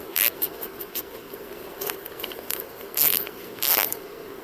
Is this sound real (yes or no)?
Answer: no